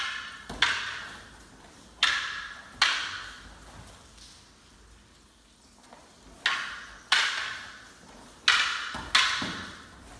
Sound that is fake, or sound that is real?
real